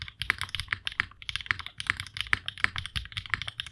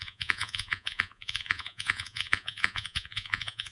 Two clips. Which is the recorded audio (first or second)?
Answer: first